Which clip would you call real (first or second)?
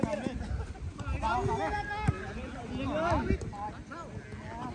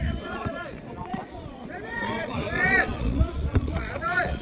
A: first